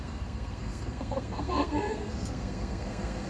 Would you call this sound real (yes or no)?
no